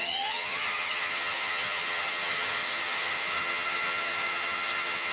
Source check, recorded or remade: remade